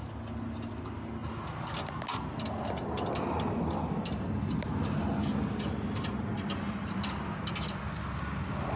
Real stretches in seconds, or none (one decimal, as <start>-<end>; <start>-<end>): 0.0-8.8